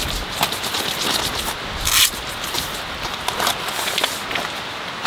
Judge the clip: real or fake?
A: real